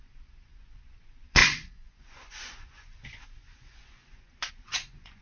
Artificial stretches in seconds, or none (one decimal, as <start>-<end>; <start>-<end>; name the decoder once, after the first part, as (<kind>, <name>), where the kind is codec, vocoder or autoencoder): 0.0-5.2 (vocoder, Vocos)